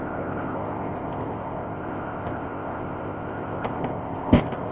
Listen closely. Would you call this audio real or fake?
fake